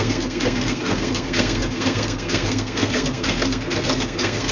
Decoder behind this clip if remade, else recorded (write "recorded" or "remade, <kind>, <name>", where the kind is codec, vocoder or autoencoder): remade, codec, SNAC